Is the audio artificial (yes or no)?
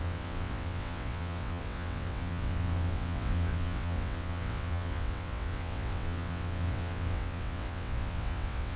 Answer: yes